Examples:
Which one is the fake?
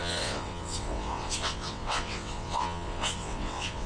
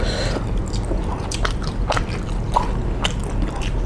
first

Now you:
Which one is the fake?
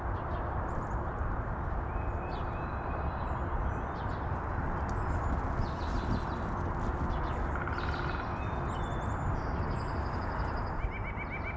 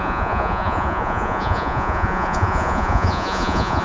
second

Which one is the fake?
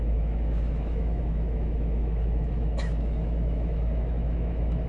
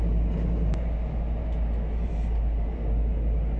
first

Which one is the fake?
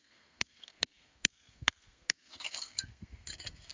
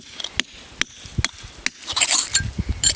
first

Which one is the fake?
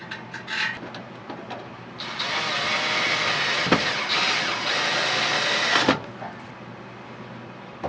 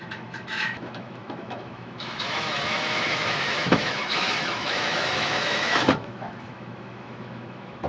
second